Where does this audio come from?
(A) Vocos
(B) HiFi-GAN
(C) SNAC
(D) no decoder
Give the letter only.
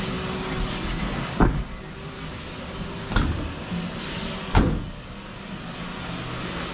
D